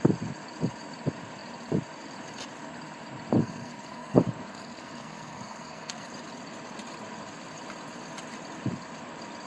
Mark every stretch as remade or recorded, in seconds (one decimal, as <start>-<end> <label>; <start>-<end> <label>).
0.0-3.4 recorded; 3.4-6.1 remade; 6.1-9.5 recorded